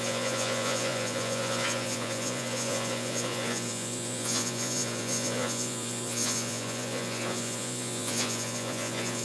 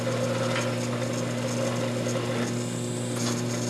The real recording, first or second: second